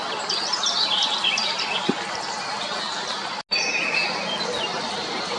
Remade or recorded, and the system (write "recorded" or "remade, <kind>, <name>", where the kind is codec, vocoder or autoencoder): recorded